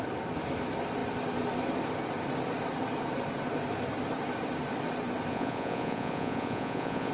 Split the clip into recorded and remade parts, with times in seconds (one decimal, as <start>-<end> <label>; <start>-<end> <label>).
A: 0.0-5.3 recorded; 5.3-7.1 remade